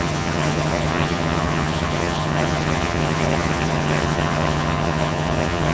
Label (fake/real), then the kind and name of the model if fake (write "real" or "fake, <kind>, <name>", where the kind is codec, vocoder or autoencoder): fake, vocoder, HiFi-GAN